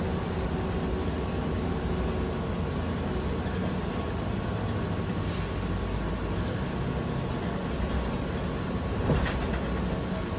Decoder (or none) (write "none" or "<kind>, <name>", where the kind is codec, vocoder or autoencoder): none